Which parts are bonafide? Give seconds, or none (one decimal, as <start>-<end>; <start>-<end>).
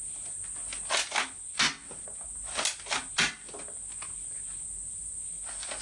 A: 0.0-5.8